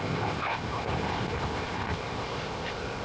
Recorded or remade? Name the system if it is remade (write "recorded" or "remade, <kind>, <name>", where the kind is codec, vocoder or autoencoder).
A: remade, codec, ZipCodec